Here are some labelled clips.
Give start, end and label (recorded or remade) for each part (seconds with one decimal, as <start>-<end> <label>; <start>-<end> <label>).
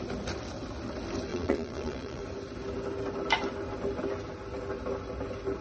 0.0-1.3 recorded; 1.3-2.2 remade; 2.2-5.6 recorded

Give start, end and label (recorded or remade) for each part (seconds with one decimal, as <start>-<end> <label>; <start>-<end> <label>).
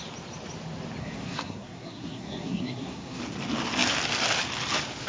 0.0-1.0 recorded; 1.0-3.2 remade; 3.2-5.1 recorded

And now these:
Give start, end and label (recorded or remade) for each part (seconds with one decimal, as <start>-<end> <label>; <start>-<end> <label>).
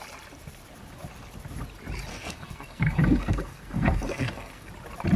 0.0-2.1 recorded; 2.1-4.7 remade; 4.7-5.2 recorded